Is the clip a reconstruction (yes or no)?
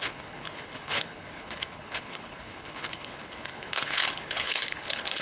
yes